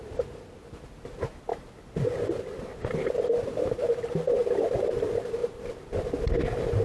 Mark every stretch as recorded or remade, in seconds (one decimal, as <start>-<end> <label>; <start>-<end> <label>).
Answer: 0.0-6.8 recorded